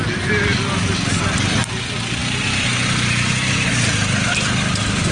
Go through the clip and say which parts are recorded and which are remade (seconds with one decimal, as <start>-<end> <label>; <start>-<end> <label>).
0.0-5.1 recorded